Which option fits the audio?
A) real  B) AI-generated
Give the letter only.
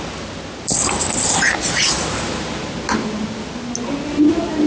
A